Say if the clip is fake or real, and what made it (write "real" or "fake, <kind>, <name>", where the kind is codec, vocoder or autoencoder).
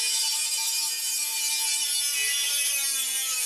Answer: real